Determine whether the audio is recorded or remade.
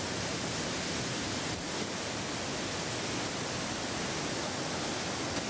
recorded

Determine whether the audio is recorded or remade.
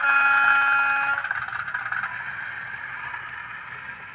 recorded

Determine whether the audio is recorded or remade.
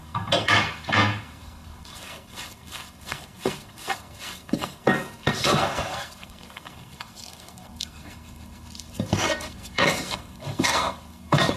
remade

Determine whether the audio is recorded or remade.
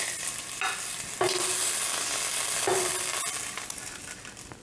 recorded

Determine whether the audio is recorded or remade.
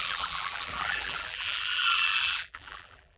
remade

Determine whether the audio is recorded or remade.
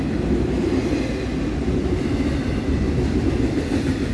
recorded